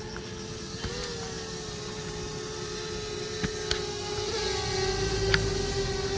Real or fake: real